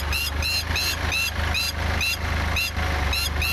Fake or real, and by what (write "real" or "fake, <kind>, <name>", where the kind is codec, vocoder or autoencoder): real